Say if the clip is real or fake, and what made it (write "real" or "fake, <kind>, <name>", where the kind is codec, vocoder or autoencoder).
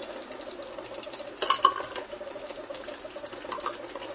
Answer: real